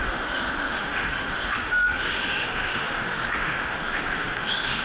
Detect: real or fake fake